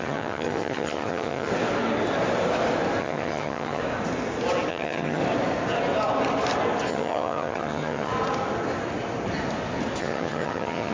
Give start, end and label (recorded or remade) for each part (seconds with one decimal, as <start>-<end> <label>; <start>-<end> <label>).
0.0-1.5 remade; 1.5-3.0 recorded; 3.0-3.8 remade; 3.8-4.7 recorded; 4.7-5.2 remade; 5.2-6.9 recorded; 6.9-8.1 remade; 8.1-10.0 recorded; 10.0-10.9 remade